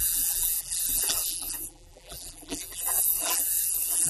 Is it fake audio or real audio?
fake